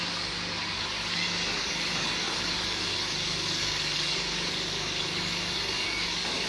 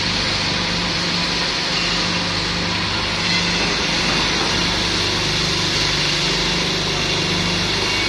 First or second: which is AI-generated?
first